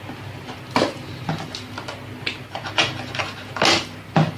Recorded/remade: recorded